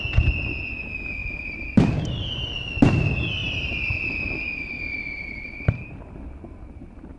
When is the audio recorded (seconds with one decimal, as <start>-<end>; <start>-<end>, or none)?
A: 0.0-1.2; 1.9-3.4